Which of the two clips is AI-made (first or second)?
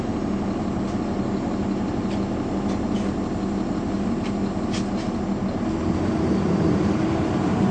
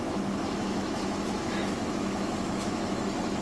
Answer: second